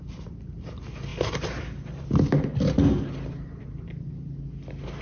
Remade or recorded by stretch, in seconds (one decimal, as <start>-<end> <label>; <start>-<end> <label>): 0.0-5.0 recorded